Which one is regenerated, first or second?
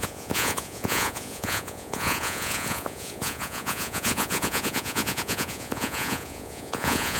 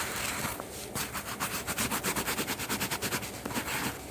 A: first